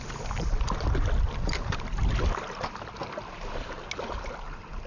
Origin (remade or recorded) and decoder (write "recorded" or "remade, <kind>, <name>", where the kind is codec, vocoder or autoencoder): recorded